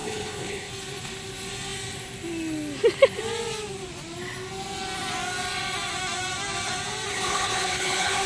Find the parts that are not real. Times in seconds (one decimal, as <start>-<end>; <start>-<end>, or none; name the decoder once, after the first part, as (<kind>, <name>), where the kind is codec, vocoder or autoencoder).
0.0-0.7 (codec, HILCodec); 7.1-8.3